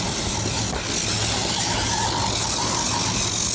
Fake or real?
real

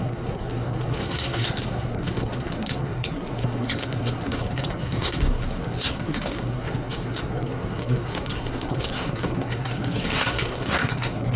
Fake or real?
fake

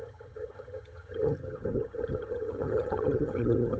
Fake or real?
fake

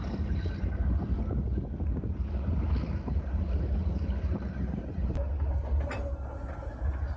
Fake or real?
real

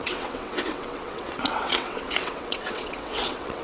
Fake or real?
fake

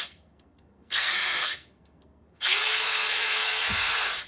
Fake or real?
fake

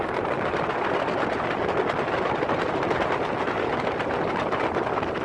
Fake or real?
real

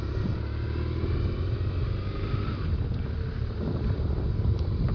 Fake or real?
real